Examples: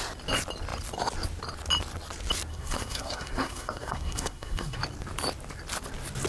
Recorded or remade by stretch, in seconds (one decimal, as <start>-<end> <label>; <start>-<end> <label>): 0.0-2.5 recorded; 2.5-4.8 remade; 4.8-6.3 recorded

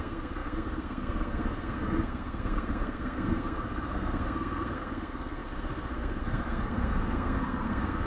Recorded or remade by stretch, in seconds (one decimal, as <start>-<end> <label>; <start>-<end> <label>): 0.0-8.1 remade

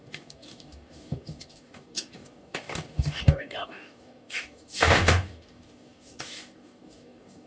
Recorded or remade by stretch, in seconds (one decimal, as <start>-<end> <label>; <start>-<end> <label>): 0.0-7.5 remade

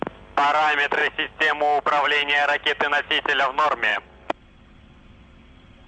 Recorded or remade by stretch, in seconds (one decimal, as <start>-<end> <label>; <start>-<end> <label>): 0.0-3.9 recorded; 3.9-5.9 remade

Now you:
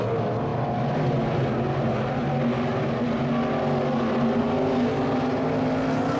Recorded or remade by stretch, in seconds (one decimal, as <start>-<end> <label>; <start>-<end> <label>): 0.0-6.2 recorded